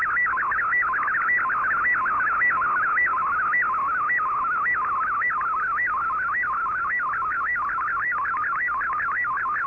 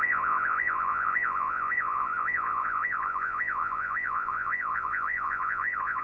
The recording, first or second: first